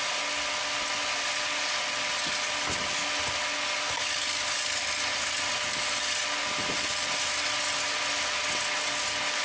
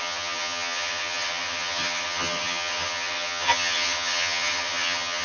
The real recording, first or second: first